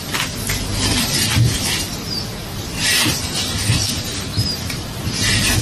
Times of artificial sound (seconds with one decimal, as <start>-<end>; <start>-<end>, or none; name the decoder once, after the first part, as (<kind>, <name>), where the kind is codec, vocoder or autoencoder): 0.7-1.8 (vocoder, BigVGAN v2); 3.8-5.6